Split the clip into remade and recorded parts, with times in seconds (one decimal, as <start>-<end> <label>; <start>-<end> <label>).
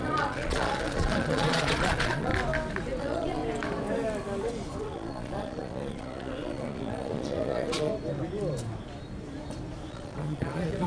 0.0-2.3 remade; 2.3-3.0 recorded; 3.0-3.4 remade; 3.4-4.8 recorded; 4.8-7.9 remade; 7.9-9.9 recorded; 9.9-10.9 remade